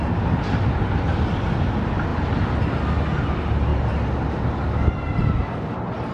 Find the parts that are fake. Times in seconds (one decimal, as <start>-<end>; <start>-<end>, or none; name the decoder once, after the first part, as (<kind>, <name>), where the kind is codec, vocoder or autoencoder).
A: none